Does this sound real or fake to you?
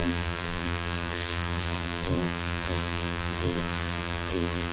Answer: fake